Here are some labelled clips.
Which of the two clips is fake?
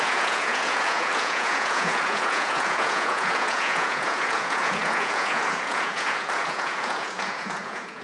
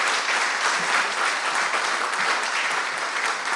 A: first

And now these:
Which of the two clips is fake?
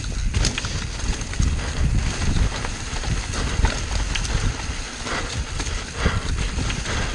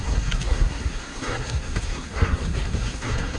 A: second